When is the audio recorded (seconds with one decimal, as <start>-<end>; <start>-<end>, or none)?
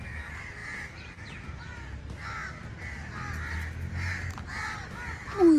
0.0-5.6